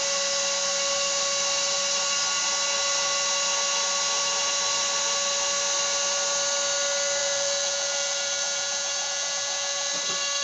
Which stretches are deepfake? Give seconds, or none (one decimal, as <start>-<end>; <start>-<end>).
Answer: 7.2-9.9